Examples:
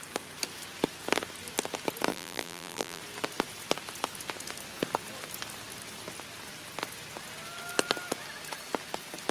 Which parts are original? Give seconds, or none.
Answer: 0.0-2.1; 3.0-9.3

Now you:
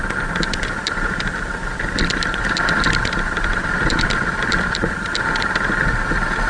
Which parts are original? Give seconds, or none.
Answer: 0.0-1.7; 4.8-6.5

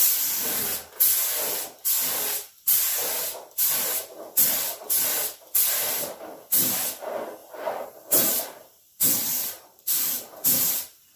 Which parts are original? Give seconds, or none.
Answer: 0.0-7.4

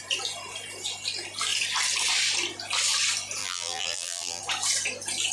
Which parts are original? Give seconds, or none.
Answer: 0.0-3.4; 4.4-5.3

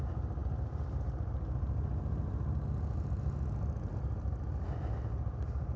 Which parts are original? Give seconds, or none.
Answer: 0.0-5.8